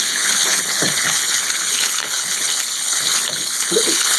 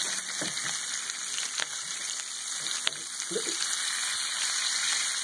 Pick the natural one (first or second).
second